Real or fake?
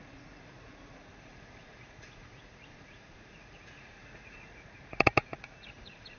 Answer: fake